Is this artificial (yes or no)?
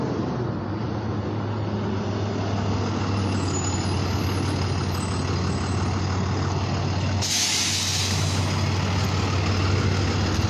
no